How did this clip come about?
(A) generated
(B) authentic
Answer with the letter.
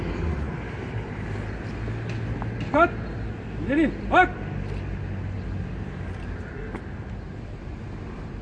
B